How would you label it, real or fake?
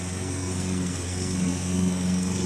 fake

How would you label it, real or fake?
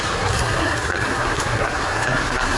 fake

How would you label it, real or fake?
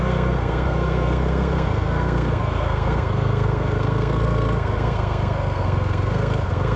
fake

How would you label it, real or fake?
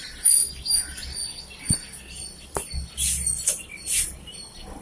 real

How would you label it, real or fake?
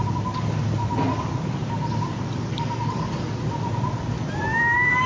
real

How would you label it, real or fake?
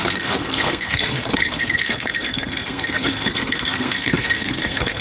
fake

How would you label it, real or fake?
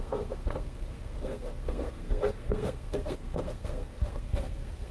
fake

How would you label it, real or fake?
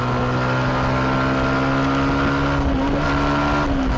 real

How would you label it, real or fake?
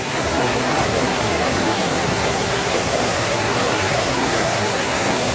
fake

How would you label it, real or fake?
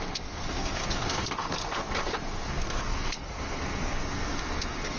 fake